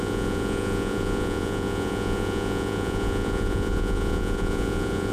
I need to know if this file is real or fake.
fake